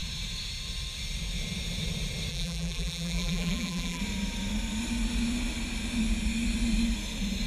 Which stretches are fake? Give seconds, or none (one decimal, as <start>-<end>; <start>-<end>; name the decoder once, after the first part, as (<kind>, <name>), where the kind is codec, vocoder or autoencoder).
2.3-4.0 (vocoder, BigVGAN v2)